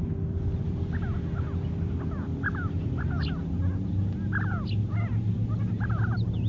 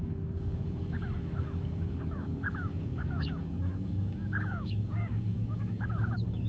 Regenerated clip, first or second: second